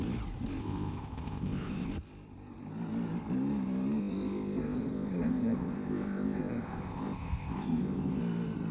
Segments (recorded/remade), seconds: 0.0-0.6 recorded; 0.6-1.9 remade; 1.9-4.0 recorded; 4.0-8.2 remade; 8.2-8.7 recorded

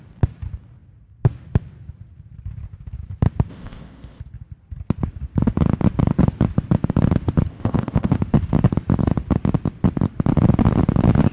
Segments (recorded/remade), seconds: 0.0-3.5 recorded; 3.5-4.2 remade; 4.2-7.5 recorded; 7.5-8.2 remade; 8.2-11.3 recorded

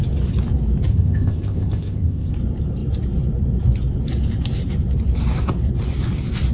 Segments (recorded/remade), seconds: 0.0-0.9 recorded; 0.9-2.3 remade; 2.3-6.5 recorded

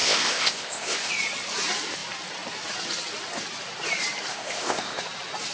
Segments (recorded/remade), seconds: 0.0-1.1 remade; 1.1-4.3 recorded; 4.3-5.0 remade; 5.0-5.5 recorded

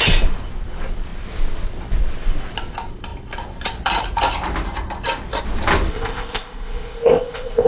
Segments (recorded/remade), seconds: 0.0-5.9 recorded; 5.9-7.7 remade